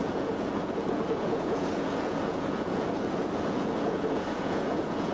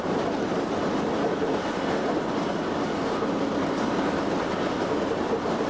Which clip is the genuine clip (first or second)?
second